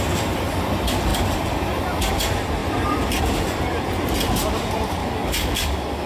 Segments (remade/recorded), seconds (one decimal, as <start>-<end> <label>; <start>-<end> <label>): 0.0-5.0 recorded; 5.0-6.1 remade